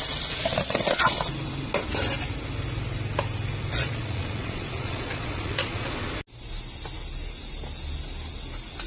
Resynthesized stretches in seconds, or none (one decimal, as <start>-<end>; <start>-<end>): 0.5-1.2; 3.7-6.1